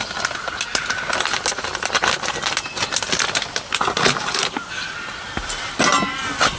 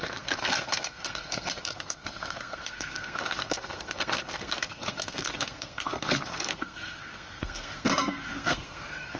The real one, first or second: first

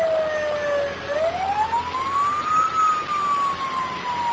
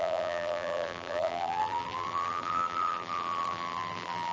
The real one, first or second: first